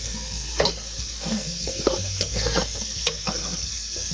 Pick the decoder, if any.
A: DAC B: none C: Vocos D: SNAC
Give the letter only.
D